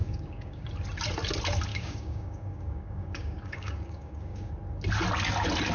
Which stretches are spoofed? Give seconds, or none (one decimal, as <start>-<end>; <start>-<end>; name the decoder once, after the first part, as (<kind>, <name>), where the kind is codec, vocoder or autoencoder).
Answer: 0.0-0.7 (codec, DAC); 1.7-4.5